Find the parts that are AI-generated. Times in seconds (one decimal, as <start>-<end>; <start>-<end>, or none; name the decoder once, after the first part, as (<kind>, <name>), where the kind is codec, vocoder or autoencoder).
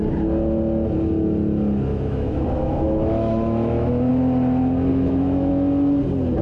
1.9-4.1 (autoencoder, DAC-VAE); 4.9-5.5